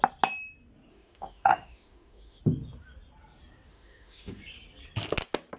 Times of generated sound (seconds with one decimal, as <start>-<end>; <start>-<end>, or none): 0.9-2.4; 3.7-4.4